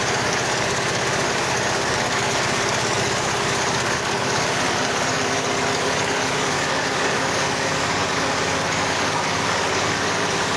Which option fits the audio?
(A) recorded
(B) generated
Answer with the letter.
B